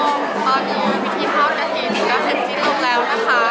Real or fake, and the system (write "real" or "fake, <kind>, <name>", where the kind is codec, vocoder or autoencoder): real